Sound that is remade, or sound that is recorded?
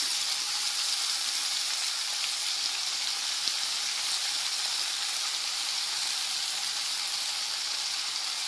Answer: recorded